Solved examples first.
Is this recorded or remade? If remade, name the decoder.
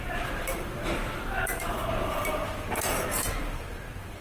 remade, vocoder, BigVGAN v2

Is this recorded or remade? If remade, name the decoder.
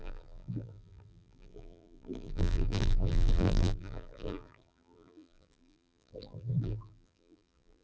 remade, vocoder, BigVGAN v2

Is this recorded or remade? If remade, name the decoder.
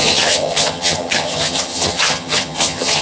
remade, vocoder, HiFi-GAN